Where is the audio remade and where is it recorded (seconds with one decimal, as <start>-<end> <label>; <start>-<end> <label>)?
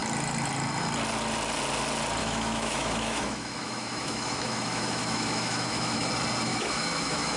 0.0-2.2 recorded; 2.2-6.1 remade; 6.1-6.5 recorded; 6.5-7.4 remade